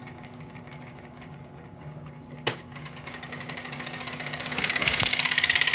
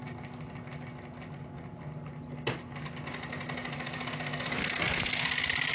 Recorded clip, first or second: second